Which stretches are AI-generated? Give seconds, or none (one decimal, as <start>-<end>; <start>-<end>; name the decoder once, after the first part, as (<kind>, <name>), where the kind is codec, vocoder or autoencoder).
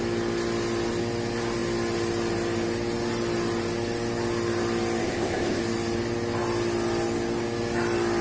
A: 5.0-5.6 (codec, ZipCodec)